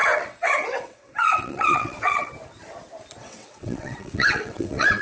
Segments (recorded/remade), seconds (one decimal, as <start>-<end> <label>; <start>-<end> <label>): 0.0-2.3 remade; 2.3-3.2 recorded; 3.2-5.0 remade